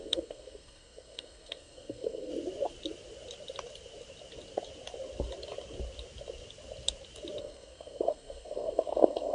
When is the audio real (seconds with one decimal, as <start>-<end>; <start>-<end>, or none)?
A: 2.3-7.4